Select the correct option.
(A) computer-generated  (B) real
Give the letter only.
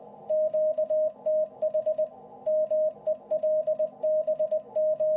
B